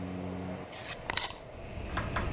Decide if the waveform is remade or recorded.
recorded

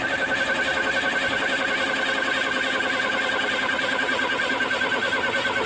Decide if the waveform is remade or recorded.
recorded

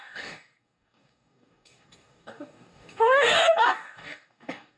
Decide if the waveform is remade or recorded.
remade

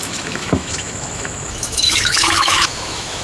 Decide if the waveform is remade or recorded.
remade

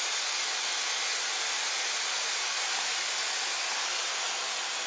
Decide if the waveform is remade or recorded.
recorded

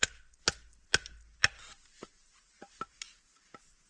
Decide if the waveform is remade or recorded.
recorded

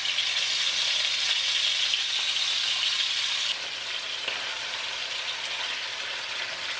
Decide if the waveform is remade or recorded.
recorded